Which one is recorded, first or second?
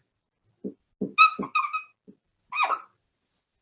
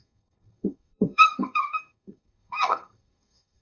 first